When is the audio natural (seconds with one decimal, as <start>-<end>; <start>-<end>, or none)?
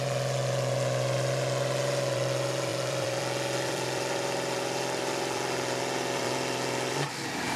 none